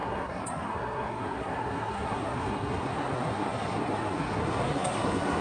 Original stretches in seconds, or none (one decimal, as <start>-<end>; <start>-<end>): none